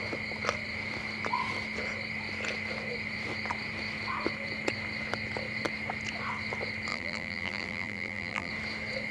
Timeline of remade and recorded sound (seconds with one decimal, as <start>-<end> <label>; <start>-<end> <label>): 0.0-6.9 recorded; 6.9-8.5 remade; 8.5-9.1 recorded